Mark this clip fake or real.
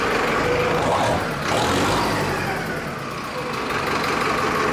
real